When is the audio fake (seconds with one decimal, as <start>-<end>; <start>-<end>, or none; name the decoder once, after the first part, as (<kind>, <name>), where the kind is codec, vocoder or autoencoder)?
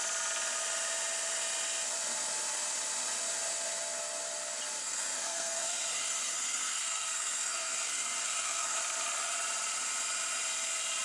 4.8-8.8 (codec, SNAC)